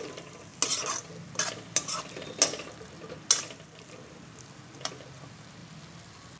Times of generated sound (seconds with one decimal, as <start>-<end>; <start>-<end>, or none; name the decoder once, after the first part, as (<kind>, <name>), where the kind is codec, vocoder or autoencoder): none